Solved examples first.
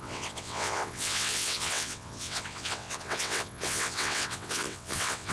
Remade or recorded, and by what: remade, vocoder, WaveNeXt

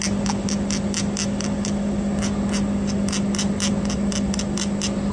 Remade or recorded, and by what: recorded